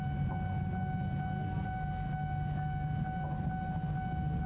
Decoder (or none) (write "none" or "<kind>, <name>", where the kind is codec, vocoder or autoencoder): none